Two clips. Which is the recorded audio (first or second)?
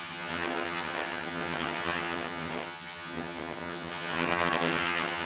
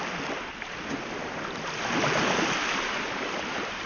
second